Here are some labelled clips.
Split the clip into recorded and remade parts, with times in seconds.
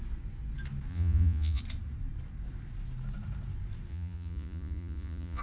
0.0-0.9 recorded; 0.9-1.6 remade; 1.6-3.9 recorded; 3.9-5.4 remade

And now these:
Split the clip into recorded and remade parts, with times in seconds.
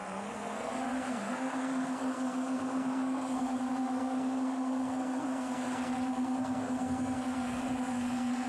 0.0-8.5 remade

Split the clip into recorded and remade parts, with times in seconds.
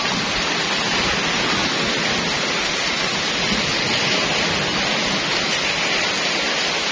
0.0-6.9 recorded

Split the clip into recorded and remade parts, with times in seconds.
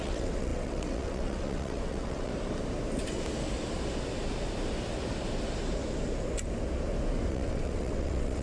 0.0-2.3 remade; 2.3-7.3 recorded; 7.3-8.4 remade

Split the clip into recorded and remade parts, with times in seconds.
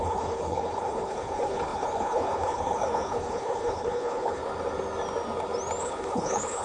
0.0-4.4 remade; 4.4-5.8 recorded; 5.8-6.6 remade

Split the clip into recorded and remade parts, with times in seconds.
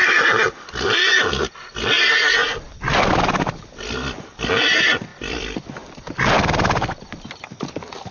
0.0-2.4 recorded; 2.4-3.1 remade; 3.1-5.1 recorded; 5.1-6.0 remade; 6.0-8.1 recorded